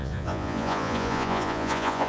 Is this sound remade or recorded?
remade